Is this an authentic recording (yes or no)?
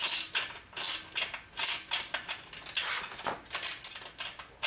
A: yes